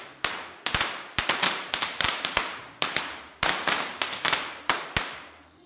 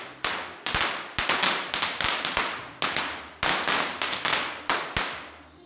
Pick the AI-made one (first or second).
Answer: first